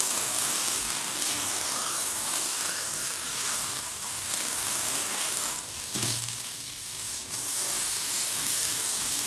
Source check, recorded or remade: remade